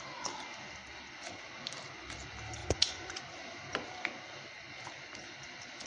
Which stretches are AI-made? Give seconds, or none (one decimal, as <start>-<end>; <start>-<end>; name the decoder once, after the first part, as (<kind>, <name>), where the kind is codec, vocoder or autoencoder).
2.6-3.2 (vocoder, Vocos)